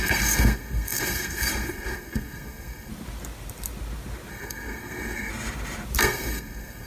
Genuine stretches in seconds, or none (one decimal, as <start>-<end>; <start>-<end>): 2.9-4.3; 5.3-6.0